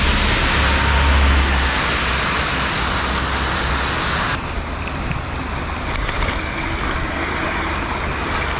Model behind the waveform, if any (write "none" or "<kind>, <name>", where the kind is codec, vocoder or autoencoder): none